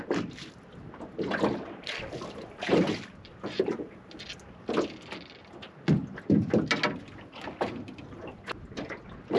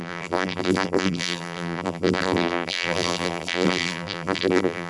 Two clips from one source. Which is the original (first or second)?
first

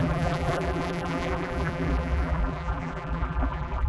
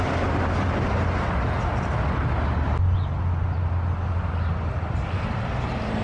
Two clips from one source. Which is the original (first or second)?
second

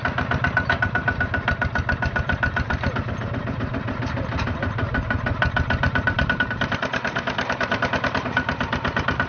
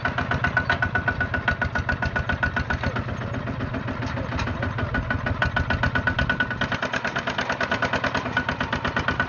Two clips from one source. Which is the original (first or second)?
second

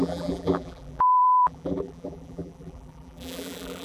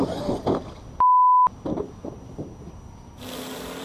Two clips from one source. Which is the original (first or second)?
second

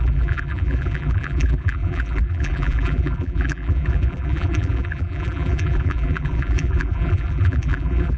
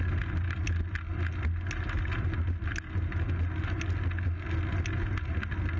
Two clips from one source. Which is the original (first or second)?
second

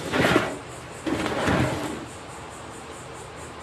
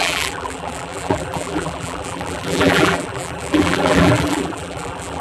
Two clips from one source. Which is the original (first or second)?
first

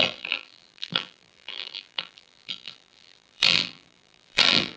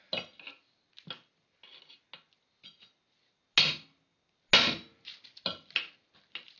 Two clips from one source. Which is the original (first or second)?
second